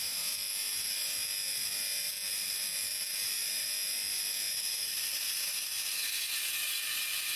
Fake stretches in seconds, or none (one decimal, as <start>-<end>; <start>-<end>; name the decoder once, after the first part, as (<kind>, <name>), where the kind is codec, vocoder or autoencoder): 0.0-7.4 (autoencoder, DAC-VAE)